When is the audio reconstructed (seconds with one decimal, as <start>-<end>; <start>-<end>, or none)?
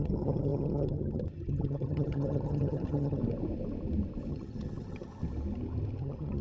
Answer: 0.0-3.2; 4.3-5.2; 6.0-6.4